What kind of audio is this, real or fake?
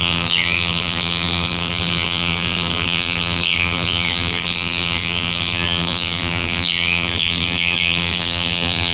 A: fake